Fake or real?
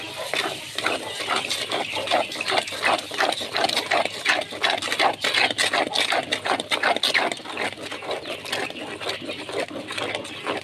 real